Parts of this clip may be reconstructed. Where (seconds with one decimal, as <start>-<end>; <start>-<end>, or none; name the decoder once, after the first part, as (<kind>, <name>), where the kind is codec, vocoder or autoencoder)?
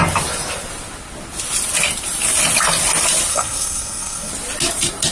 3.3-4.3 (codec, SNAC)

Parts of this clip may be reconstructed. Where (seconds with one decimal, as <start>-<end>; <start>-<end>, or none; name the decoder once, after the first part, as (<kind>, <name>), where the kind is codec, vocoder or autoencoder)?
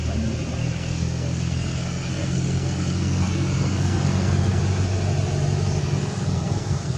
0.6-4.6 (codec, SNAC); 5.8-7.0